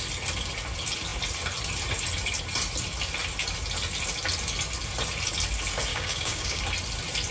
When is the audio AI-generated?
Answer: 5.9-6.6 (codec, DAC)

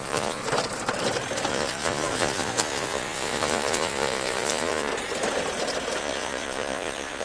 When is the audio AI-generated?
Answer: 0.0-0.4 (vocoder, Vocos); 1.5-4.9; 6.0-7.2

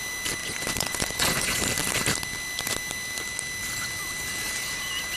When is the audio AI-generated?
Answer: 0.4-1.6 (vocoder, Vocos)

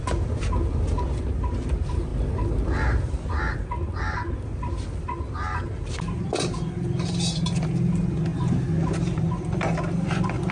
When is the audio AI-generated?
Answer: none

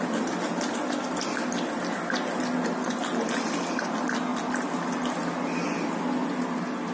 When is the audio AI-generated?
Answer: none